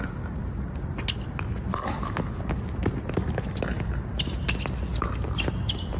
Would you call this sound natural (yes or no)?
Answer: yes